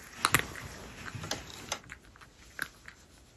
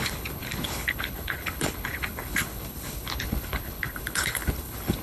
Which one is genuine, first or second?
first